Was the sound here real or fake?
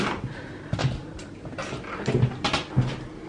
real